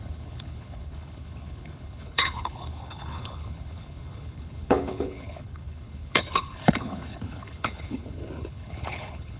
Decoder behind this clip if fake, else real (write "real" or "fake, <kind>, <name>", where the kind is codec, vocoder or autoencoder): fake, codec, HILCodec